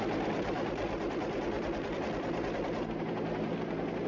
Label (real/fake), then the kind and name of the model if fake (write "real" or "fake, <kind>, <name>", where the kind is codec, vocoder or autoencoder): real